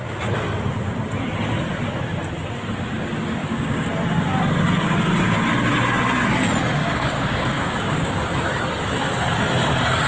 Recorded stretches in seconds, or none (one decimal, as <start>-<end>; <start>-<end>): 0.0-3.4; 3.9-6.8; 8.1-10.1